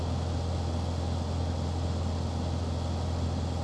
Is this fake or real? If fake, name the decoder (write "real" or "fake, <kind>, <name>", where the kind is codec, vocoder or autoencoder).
real